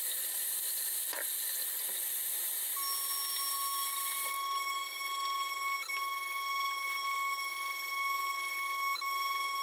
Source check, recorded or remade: recorded